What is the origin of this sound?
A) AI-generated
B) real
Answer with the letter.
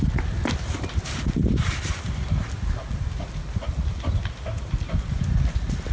B